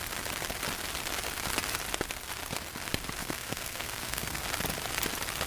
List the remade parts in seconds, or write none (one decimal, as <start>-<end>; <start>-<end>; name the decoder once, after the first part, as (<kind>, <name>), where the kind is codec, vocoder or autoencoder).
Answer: 3.2-4.4 (codec, SNAC)